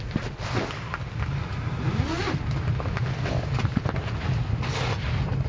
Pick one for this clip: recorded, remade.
recorded